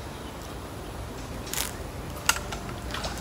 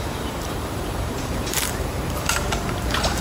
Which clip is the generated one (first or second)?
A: second